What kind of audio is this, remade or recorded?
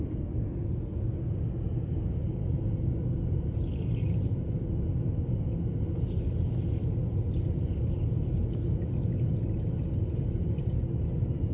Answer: recorded